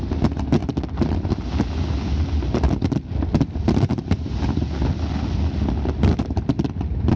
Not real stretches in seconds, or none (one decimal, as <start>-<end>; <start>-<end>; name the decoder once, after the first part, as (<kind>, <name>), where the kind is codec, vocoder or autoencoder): none